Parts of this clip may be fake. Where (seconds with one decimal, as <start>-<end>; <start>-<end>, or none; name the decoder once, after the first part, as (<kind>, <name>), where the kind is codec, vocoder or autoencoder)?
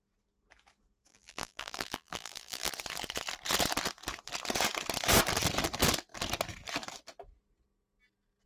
1.1-2.7 (vocoder, BigVGAN v2)